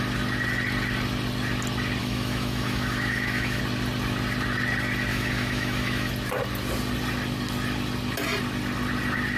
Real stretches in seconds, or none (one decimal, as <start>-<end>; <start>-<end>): 0.0-2.0; 3.6-5.1; 6.1-9.4